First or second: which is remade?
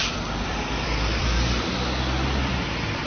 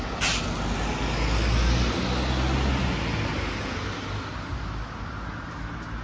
first